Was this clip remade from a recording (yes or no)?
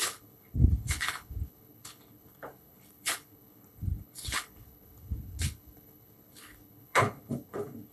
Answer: yes